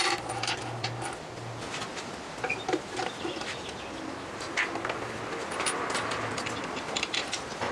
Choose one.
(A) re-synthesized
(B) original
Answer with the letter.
B